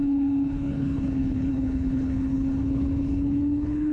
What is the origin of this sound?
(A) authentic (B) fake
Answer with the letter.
B